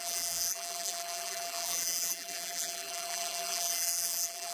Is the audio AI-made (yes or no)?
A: yes